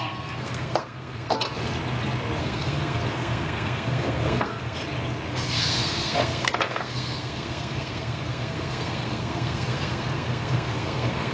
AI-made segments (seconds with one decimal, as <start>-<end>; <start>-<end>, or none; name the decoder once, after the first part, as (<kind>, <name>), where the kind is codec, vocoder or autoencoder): 0.0-1.5 (codec, SNAC); 2.4-4.8; 5.3-11.3